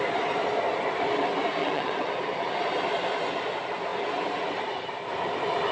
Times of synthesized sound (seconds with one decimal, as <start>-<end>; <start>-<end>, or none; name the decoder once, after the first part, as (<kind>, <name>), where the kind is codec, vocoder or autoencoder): 1.6-2.1 (vocoder, WaveNeXt)